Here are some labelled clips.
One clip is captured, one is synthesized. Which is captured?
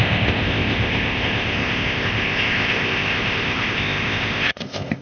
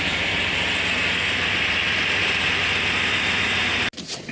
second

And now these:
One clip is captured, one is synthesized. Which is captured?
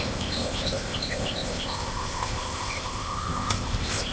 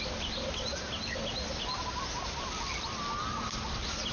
second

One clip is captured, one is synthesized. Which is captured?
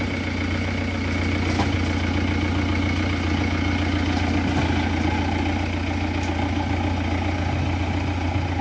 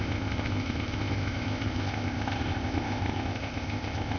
first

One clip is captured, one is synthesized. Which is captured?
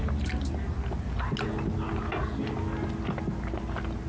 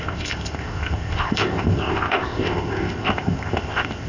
first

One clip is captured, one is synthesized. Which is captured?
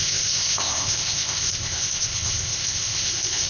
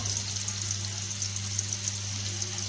second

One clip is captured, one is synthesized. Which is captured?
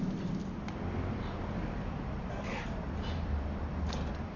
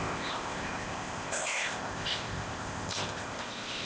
first